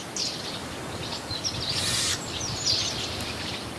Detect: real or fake real